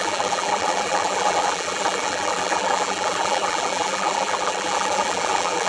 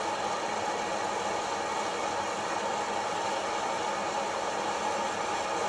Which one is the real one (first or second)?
second